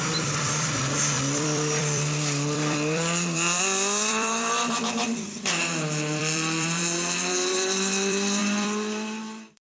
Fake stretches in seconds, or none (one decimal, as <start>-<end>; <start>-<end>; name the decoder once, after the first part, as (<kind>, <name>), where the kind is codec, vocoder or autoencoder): 0.0-9.7 (vocoder, BigVGAN v2)